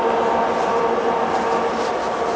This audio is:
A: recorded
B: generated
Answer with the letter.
A